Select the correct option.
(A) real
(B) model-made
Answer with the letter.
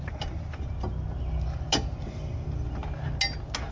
A